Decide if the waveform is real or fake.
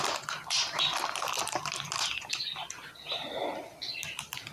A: real